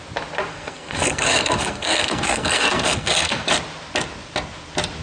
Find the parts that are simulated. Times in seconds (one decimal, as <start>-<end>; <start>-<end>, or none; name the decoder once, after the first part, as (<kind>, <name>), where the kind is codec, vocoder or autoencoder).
0.5-3.5 (codec, SNAC)